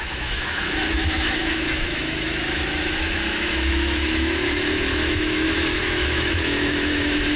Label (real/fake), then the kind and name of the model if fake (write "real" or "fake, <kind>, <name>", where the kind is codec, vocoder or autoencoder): fake, autoencoder, DAC-VAE